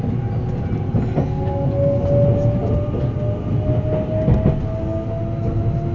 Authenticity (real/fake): real